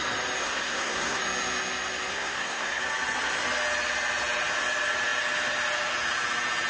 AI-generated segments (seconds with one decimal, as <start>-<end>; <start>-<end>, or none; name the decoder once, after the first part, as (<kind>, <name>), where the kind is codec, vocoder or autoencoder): 0.4-1.2 (codec, SNAC); 2.1-2.8